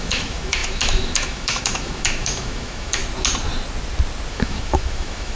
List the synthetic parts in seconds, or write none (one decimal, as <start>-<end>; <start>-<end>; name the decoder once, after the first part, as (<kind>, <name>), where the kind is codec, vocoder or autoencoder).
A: 0.0-3.0 (autoencoder, DAC-VAE); 4.3-5.4